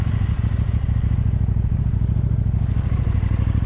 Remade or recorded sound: recorded